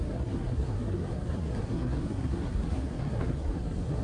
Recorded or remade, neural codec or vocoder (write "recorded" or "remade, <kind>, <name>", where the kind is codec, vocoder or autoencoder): remade, codec, SNAC